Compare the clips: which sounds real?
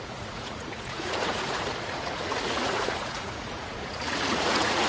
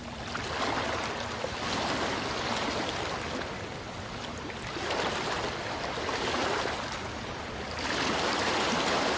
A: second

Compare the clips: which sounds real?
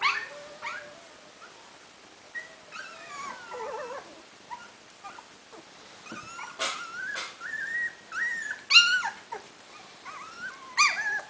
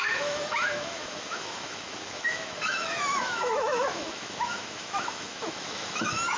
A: first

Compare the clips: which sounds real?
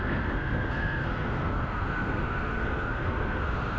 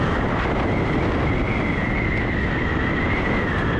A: second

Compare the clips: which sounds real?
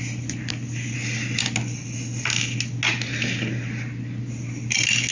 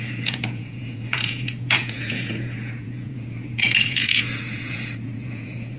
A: first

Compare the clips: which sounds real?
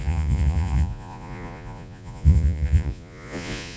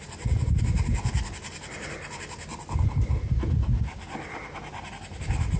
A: second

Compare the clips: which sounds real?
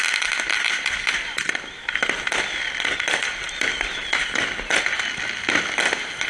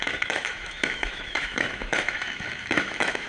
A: first